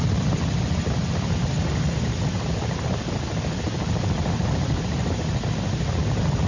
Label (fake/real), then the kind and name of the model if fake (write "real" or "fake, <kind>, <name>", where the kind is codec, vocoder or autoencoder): real